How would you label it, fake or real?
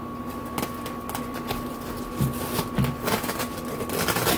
real